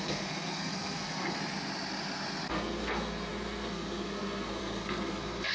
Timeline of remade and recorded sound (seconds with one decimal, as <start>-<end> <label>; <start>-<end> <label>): 0.0-1.4 remade; 1.4-2.5 recorded; 2.5-5.5 remade